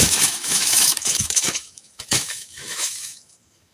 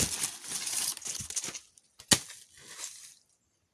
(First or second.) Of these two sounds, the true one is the second